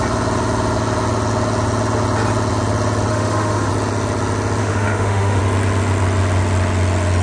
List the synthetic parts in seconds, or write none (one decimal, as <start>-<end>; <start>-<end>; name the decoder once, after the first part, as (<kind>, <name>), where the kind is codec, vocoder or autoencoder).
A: 3.1-3.7 (autoencoder, DAC-VAE); 4.6-5.4